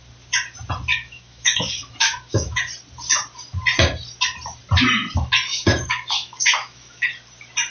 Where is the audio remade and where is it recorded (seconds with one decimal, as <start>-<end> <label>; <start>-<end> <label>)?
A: 0.0-0.9 recorded; 0.9-2.6 remade; 2.6-5.5 recorded; 5.5-7.1 remade; 7.1-7.7 recorded